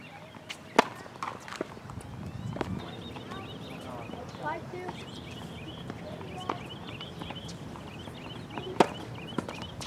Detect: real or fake real